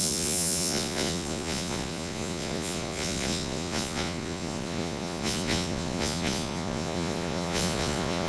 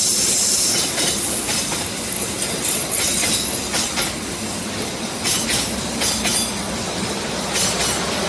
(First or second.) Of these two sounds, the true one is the second